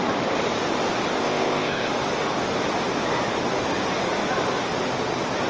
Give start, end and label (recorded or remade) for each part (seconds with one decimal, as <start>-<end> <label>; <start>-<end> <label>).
0.0-1.2 recorded; 1.2-1.9 remade; 1.9-5.5 recorded